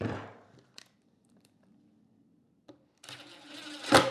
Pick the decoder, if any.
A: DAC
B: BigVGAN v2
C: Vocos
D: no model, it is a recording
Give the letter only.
B